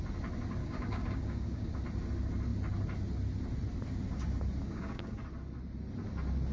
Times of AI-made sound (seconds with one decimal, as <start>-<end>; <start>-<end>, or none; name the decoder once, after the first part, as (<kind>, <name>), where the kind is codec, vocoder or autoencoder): 0.6-1.8 (codec, DAC); 4.6-5.2

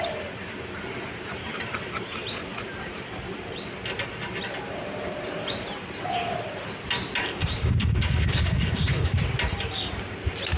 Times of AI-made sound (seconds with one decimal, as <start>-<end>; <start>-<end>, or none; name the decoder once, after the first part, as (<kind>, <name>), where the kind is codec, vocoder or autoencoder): 7.2-9.2 (codec, DAC)

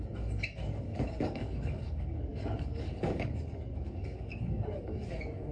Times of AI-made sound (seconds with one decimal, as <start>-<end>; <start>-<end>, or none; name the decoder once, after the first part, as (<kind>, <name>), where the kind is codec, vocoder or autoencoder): 0.0-5.5 (codec, DAC)

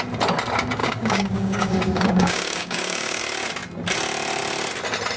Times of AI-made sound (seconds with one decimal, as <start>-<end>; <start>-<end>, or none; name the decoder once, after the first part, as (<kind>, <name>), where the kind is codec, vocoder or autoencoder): 0.8-3.2 (codec, DAC)

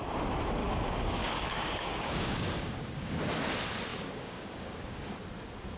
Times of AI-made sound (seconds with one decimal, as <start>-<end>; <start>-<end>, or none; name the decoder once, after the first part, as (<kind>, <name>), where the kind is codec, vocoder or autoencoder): 0.6-3.3 (codec, DAC); 3.9-5.0

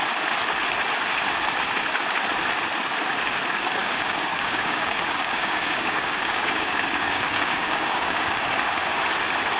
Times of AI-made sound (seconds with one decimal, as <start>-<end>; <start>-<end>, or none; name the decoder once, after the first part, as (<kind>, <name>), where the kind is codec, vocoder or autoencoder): 3.8-8.4 (codec, DAC)

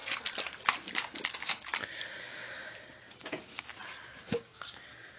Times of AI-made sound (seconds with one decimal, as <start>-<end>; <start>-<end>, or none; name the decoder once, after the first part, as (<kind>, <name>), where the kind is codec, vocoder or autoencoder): 3.1-3.5 (codec, DAC); 4.1-4.5